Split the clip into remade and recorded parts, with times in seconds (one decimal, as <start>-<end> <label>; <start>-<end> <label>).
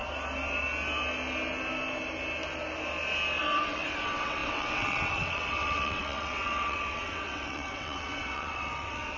0.0-3.4 recorded; 3.4-9.2 remade